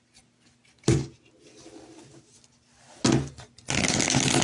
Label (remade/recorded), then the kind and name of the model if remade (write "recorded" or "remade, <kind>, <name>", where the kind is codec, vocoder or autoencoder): recorded